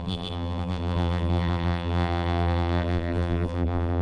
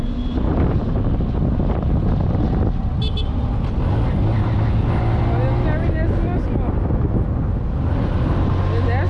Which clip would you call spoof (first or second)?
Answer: first